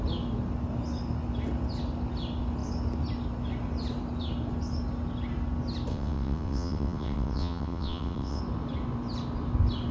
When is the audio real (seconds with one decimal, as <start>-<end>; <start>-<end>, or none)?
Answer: 0.0-5.9; 8.4-9.9